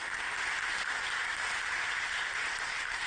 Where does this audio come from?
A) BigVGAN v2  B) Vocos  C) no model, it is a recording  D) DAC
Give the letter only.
C